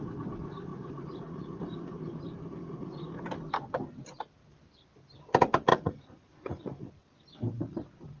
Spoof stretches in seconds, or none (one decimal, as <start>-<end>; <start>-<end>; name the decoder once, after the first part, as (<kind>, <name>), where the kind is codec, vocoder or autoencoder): 0.7-2.2 (vocoder, Vocos); 2.6-3.2; 5.7-6.9